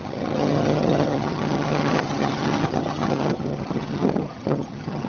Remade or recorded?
remade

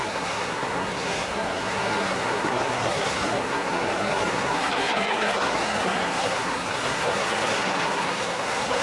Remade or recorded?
remade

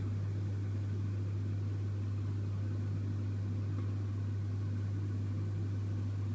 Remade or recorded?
recorded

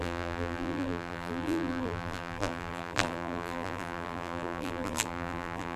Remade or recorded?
remade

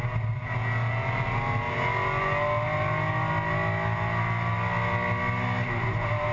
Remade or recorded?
recorded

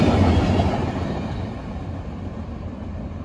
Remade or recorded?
recorded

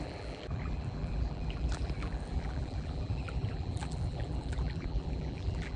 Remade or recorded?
remade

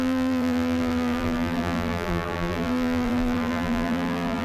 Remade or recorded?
remade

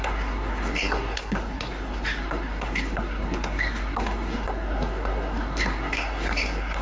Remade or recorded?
remade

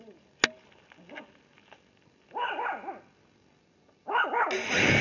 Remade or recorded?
recorded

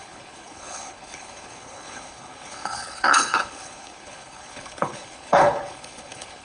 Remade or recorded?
remade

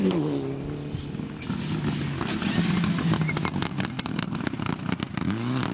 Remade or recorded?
recorded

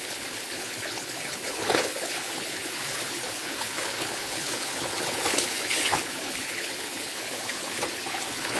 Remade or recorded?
remade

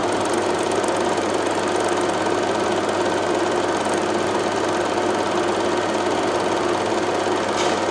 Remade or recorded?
recorded